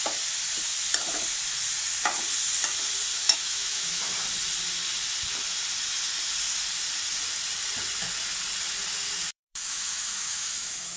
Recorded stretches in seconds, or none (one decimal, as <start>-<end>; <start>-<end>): 0.0-3.1; 4.0-9.3